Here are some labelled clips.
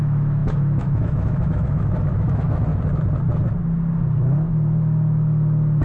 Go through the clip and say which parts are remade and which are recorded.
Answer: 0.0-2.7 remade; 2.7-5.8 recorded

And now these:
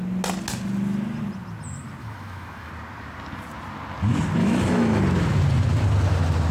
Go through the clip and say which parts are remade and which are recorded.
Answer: 0.0-2.0 recorded; 2.0-2.7 remade; 2.7-4.4 recorded; 4.4-5.0 remade; 5.0-6.5 recorded

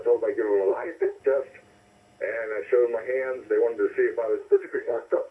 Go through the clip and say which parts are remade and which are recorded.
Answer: 0.0-0.7 recorded; 0.7-1.2 remade; 1.2-4.4 recorded; 4.4-5.3 remade

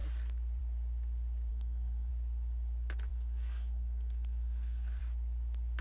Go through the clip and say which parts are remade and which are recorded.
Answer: 0.0-1.5 recorded; 1.5-2.1 remade; 2.1-3.1 recorded; 3.1-5.0 remade; 5.0-5.8 recorded

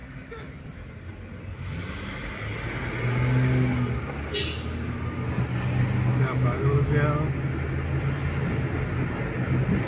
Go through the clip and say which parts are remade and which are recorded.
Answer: 0.0-0.5 remade; 0.5-1.5 recorded; 1.5-2.3 remade; 2.3-6.1 recorded; 6.1-6.9 remade; 6.9-9.9 recorded

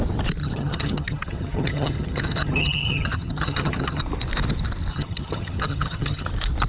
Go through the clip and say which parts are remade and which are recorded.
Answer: 0.0-0.4 recorded; 0.4-4.0 remade; 4.0-4.9 recorded; 4.9-6.3 remade; 6.3-6.7 recorded

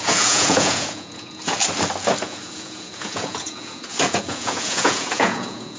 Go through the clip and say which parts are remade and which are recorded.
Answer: 0.0-1.6 remade; 1.6-2.2 recorded; 2.2-5.8 remade

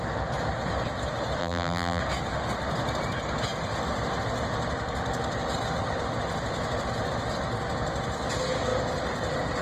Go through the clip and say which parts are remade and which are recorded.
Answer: 0.0-1.4 recorded; 1.4-2.0 remade; 2.0-9.6 recorded